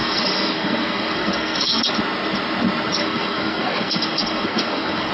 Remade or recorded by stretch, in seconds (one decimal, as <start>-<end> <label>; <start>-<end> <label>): 0.0-1.8 remade; 1.8-3.0 recorded; 3.0-5.1 remade